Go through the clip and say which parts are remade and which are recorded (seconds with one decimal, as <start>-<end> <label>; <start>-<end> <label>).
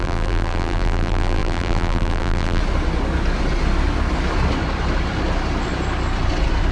0.0-2.6 remade; 2.6-6.7 recorded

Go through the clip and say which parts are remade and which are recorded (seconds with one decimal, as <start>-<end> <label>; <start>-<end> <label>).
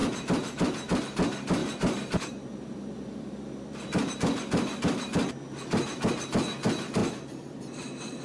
0.0-1.0 remade; 1.0-1.6 recorded; 1.6-4.1 remade; 4.1-7.0 recorded; 7.0-7.6 remade; 7.6-8.2 recorded